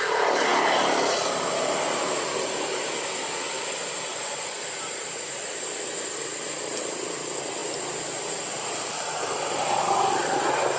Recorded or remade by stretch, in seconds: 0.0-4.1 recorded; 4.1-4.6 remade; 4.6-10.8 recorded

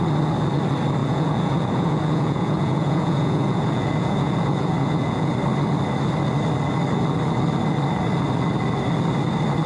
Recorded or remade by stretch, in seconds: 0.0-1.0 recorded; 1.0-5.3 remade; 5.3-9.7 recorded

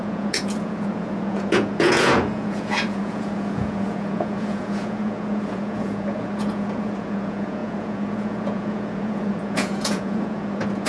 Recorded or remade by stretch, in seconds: 0.0-10.9 remade

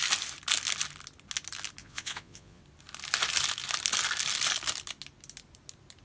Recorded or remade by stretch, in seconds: 0.0-1.8 recorded; 1.8-2.6 remade; 2.6-6.0 recorded

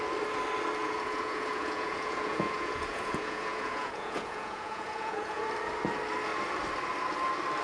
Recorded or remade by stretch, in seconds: 0.0-0.8 recorded; 0.8-5.4 remade; 5.4-7.6 recorded